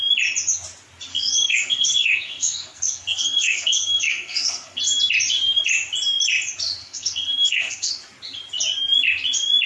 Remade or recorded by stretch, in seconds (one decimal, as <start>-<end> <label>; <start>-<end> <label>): 0.0-1.1 recorded; 1.1-4.8 remade; 4.8-6.8 recorded; 6.8-7.9 remade; 7.9-9.7 recorded

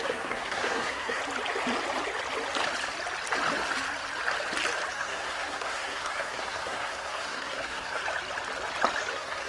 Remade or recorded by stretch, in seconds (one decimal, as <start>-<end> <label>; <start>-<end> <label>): 0.0-1.2 remade; 1.2-4.9 recorded; 4.9-8.0 remade; 8.0-9.1 recorded; 9.1-9.5 remade

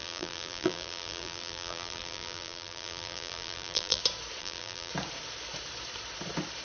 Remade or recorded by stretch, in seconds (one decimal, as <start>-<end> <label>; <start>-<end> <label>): 0.0-4.0 remade; 4.0-4.4 recorded; 4.4-4.9 remade; 4.9-6.6 recorded